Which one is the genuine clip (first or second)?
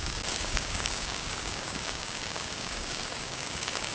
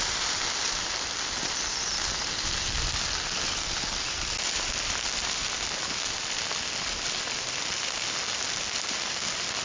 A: second